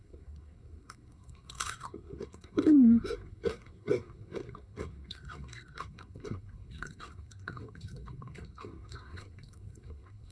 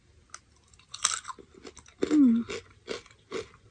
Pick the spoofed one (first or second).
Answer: first